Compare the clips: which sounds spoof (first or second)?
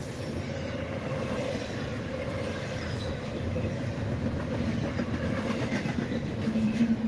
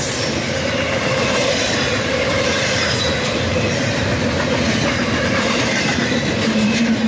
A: second